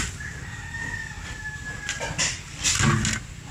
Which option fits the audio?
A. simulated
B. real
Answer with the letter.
B